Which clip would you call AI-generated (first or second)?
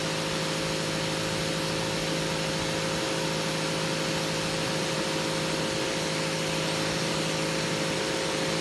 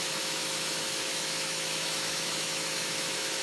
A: second